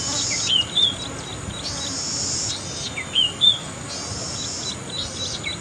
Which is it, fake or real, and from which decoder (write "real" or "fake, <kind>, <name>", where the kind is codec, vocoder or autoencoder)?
real